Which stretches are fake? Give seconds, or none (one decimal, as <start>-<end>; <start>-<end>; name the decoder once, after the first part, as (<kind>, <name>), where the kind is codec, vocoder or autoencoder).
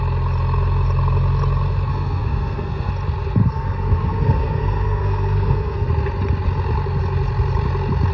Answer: 1.9-2.9 (codec, SNAC); 3.4-5.9